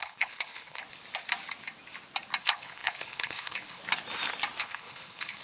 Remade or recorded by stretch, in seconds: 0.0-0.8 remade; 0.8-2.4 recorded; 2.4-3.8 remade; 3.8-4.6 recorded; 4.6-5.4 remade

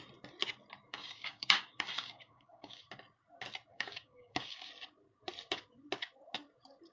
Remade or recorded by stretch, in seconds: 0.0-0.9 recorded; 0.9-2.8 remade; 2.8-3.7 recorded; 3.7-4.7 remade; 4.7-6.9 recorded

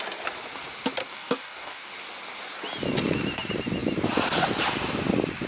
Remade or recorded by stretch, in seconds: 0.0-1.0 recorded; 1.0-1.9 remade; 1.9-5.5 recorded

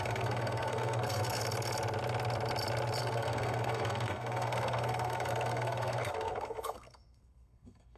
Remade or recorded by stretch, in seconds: 0.0-1.4 remade; 1.4-3.0 recorded; 3.0-8.0 remade